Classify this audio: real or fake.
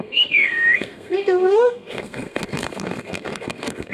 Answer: fake